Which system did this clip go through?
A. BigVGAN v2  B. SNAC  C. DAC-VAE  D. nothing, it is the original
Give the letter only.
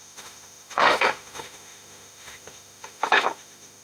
C